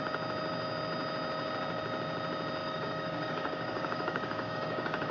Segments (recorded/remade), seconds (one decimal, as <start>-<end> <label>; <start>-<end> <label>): 0.0-2.6 recorded; 2.6-5.1 remade